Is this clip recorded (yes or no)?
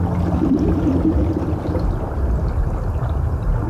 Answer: yes